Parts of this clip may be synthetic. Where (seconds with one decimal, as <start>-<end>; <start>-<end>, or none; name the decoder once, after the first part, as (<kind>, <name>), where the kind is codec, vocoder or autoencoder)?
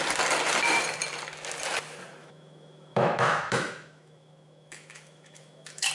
2.2-5.9 (autoencoder, DAC-VAE)